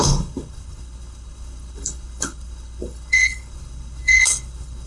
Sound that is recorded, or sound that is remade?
remade